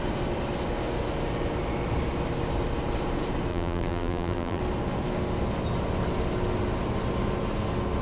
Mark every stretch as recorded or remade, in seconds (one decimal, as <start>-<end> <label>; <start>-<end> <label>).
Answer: 0.0-3.5 recorded; 3.5-4.6 remade; 4.6-8.0 recorded